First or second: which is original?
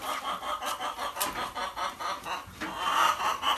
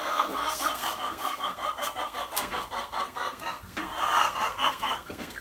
first